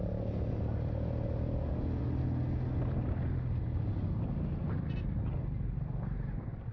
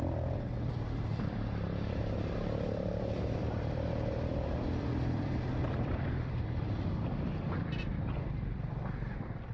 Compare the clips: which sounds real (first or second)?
first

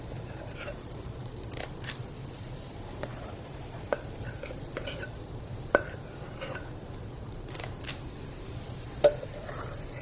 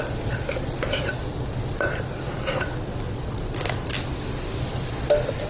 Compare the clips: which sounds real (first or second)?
second